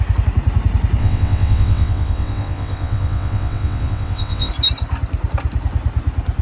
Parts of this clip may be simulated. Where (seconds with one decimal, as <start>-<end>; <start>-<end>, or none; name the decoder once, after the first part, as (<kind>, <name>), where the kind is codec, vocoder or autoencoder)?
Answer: 1.0-4.5 (vocoder, WaveNeXt)